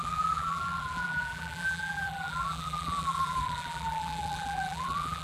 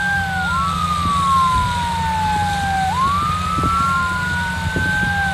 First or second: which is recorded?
second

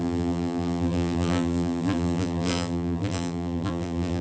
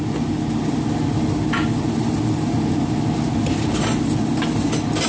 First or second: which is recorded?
second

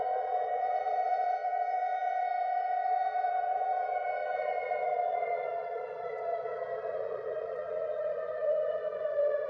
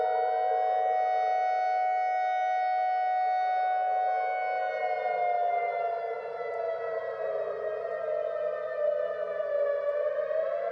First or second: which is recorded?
second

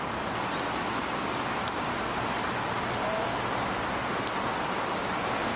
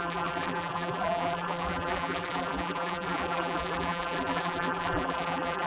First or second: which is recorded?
first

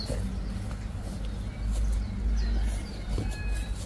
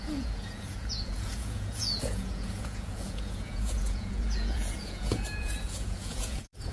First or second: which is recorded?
first